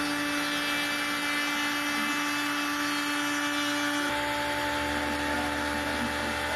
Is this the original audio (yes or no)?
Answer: yes